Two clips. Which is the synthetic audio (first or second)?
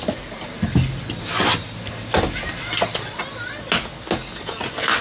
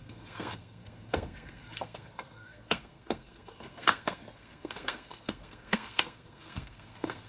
second